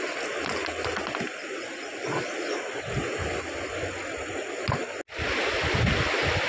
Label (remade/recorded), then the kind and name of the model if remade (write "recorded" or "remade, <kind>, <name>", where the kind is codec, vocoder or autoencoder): recorded